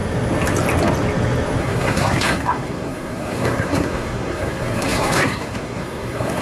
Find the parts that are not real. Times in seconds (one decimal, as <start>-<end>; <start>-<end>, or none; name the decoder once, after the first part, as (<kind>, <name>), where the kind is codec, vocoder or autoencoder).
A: 1.6-6.4 (codec, SNAC)